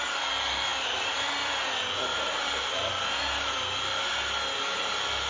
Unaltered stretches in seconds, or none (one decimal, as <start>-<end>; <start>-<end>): 0.0-0.7; 1.5-2.1; 2.9-5.3